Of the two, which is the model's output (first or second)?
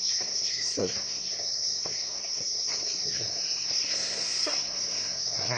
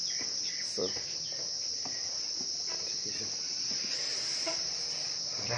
first